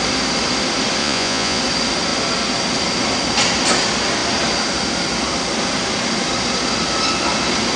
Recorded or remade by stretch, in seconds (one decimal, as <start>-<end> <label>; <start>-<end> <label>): 0.0-1.0 recorded; 1.0-1.6 remade; 1.6-7.8 recorded

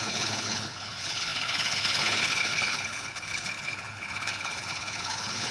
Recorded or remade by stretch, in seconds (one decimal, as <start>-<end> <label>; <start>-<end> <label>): 0.0-5.5 remade

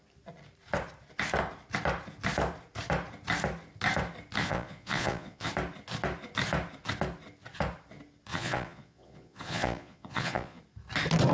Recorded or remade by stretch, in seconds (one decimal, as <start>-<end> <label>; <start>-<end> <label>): 0.0-4.4 recorded; 4.4-5.5 remade; 5.5-8.3 recorded; 8.3-10.6 remade; 10.6-11.3 recorded

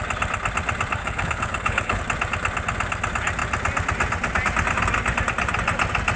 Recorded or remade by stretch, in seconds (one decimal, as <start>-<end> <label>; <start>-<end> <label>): 0.0-1.0 recorded; 1.0-2.0 remade; 2.0-6.2 recorded

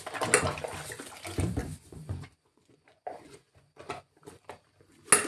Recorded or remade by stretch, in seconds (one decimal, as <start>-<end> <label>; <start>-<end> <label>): 0.0-1.6 recorded; 1.6-4.1 remade; 4.1-5.3 recorded

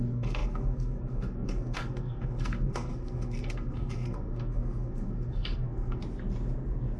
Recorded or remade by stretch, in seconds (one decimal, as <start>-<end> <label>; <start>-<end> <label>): 0.0-6.0 remade; 6.0-7.0 recorded

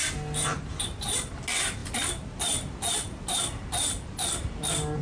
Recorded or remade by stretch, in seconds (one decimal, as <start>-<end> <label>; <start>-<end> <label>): 0.0-1.8 recorded; 1.8-5.0 remade

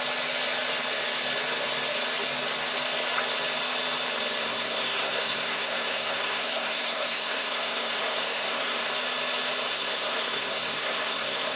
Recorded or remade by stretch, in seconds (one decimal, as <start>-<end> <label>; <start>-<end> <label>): 0.0-4.4 recorded; 4.4-8.9 remade; 8.9-9.7 recorded; 9.7-11.6 remade